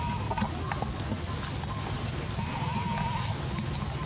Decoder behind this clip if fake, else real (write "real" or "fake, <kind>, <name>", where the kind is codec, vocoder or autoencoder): real